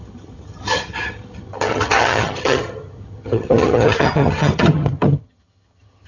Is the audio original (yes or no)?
no